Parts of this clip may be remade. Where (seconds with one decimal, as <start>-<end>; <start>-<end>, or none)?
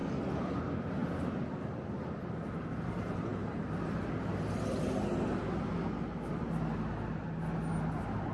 none